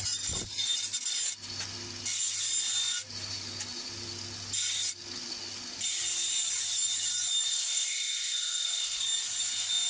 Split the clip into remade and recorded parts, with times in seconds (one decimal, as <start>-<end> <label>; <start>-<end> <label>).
0.0-7.5 recorded; 7.5-9.0 remade; 9.0-9.9 recorded